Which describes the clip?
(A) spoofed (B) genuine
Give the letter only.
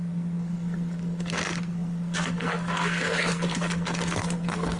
A